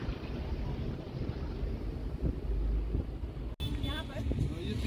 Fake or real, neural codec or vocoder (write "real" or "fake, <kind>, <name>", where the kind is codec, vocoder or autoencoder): real